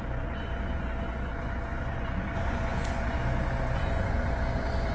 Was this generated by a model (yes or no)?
yes